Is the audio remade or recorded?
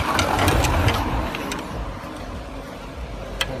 recorded